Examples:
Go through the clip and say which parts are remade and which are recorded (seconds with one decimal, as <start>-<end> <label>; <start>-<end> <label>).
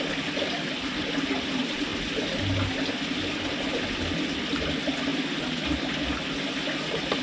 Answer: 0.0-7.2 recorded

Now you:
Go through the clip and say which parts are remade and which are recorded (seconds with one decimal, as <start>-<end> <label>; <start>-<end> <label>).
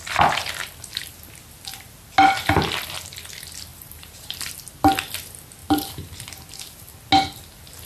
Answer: 0.0-3.7 recorded; 3.7-4.7 remade; 4.7-5.6 recorded; 5.6-6.3 remade; 6.3-7.9 recorded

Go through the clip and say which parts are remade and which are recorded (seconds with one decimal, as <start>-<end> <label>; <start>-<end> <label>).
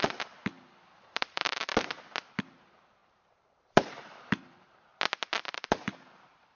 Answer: 0.0-1.7 remade; 1.7-2.4 recorded; 2.4-4.9 remade; 4.9-5.5 recorded; 5.5-6.5 remade